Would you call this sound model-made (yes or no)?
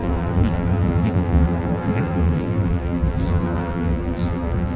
yes